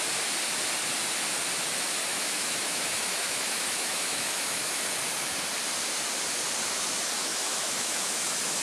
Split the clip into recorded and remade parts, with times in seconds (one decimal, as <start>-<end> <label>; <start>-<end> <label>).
0.0-2.1 recorded; 2.1-4.8 remade; 4.8-7.3 recorded; 7.3-8.6 remade